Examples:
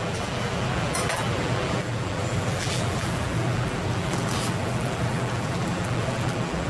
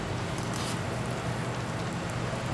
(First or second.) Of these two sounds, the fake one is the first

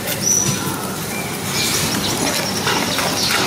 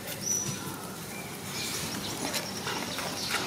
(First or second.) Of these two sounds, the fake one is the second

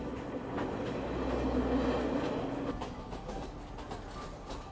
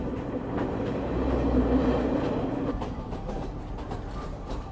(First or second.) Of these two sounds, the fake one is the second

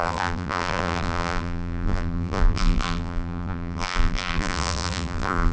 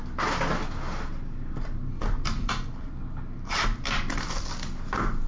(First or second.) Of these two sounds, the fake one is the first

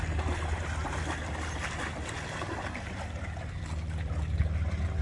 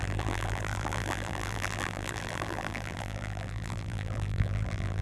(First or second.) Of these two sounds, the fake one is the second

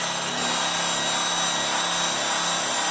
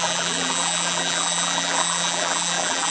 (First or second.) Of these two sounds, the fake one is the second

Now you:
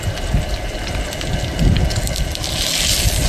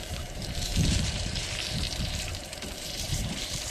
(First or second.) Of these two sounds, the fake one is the second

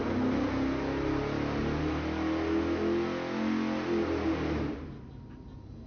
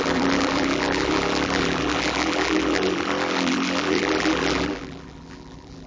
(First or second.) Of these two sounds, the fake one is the second